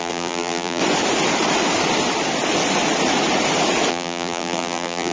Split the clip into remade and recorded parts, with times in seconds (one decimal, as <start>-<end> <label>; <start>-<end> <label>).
0.0-0.8 remade; 0.8-3.9 recorded; 3.9-5.1 remade